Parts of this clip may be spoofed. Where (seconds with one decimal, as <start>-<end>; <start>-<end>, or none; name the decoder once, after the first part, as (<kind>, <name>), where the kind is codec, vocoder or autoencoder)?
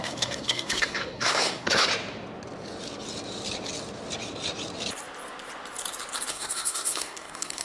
0.0-1.9 (codec, SNAC); 6.3-7.6